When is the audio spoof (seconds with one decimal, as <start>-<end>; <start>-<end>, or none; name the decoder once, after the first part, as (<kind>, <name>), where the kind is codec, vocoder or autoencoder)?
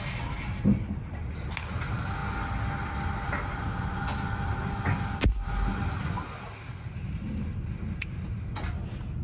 none